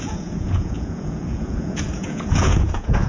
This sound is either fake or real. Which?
fake